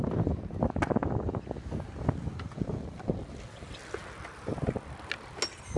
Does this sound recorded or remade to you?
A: recorded